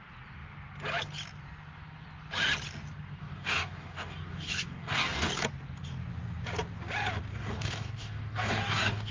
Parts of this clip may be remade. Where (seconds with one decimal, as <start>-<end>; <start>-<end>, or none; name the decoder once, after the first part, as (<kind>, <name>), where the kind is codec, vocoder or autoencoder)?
3.2-5.3 (codec, DAC); 7.3-9.1

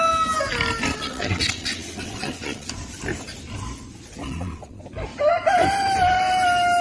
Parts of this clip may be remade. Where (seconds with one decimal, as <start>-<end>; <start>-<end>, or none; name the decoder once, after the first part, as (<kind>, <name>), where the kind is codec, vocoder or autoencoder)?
0.9-2.7 (vocoder, WaveNeXt); 4.2-4.8

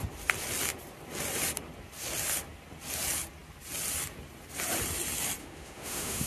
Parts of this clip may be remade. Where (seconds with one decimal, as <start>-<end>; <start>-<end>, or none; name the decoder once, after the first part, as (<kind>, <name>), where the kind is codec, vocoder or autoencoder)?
5.4-6.3 (autoencoder, DAC-VAE)